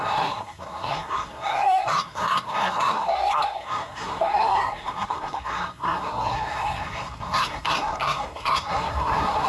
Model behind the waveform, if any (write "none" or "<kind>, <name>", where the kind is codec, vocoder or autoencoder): codec, SNAC